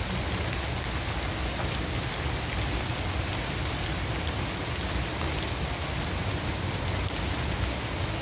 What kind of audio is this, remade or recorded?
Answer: recorded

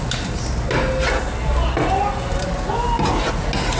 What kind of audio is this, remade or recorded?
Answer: recorded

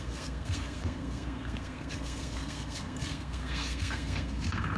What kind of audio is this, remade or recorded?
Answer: remade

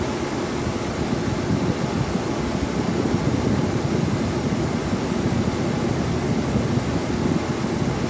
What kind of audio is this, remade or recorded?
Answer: recorded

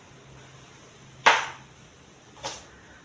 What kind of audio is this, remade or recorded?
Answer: recorded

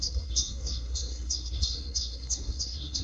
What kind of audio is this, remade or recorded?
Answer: remade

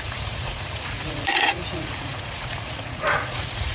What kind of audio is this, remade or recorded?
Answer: remade